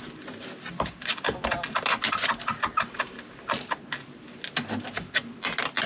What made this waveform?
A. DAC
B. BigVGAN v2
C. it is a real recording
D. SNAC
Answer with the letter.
C